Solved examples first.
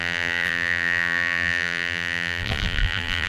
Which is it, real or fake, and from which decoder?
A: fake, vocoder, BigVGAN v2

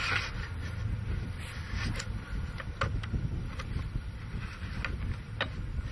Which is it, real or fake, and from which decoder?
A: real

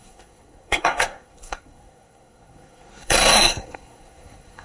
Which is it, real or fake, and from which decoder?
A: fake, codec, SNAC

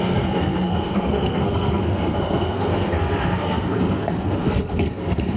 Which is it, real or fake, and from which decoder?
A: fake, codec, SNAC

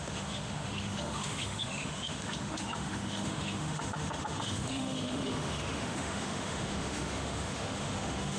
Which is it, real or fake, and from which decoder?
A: fake, autoencoder, DAC-VAE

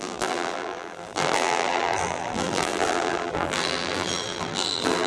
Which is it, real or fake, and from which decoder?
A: fake, vocoder, BigVGAN v2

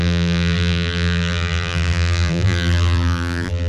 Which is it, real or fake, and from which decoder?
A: fake, vocoder, BigVGAN v2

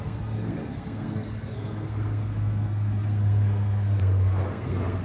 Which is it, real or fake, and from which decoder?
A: fake, codec, SNAC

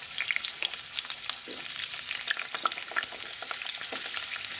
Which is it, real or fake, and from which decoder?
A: real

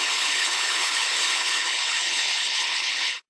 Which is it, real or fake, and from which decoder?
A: fake, codec, HILCodec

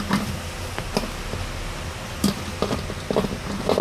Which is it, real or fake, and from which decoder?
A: real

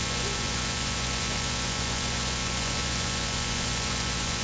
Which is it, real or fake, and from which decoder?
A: fake, vocoder, Vocos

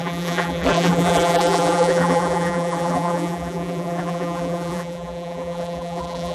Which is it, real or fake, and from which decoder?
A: fake, vocoder, BigVGAN v2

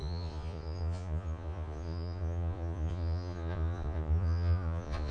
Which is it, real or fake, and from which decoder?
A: fake, vocoder, Vocos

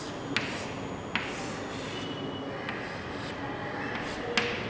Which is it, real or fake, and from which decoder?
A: real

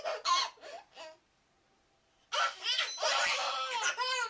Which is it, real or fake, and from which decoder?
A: real